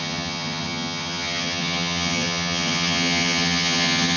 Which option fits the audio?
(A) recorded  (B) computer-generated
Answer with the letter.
B